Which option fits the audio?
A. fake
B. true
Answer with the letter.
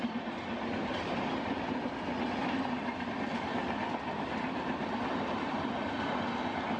B